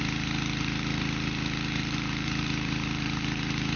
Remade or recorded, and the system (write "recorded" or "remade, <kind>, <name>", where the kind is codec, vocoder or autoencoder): remade, vocoder, BigVGAN v2